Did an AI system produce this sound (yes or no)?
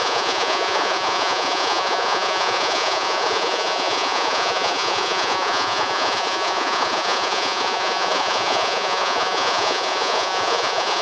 yes